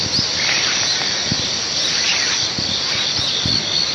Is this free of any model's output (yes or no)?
yes